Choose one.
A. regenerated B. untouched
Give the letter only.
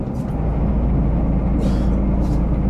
B